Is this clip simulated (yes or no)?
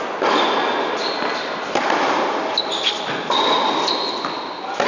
no